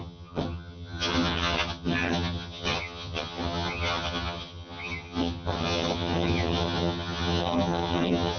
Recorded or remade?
remade